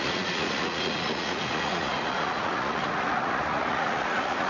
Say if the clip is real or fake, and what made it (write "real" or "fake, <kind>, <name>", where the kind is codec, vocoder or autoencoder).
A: fake, vocoder, Vocos